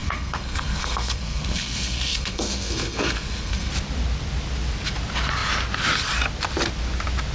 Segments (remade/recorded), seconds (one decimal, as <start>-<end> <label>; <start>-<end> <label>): 0.0-3.7 remade; 3.7-7.3 recorded